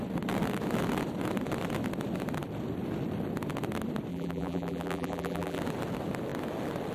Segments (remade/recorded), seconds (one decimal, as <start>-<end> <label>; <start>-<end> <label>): 0.0-4.1 recorded; 4.1-5.6 remade; 5.6-6.9 recorded